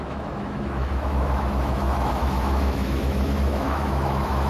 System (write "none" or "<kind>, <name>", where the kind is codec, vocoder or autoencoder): autoencoder, DAC-VAE